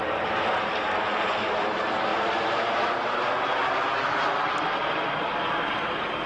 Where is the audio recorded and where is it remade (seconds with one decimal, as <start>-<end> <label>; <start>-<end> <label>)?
0.0-6.3 recorded